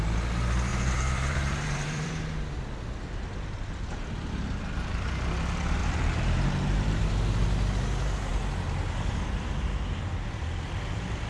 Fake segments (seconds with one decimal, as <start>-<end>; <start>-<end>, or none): 0.7-2.1; 5.8-7.0